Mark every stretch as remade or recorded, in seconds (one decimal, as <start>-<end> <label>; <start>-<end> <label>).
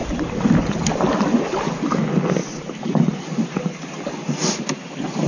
0.0-5.3 recorded